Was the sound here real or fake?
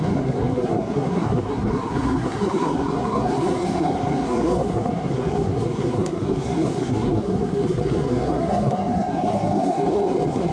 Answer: fake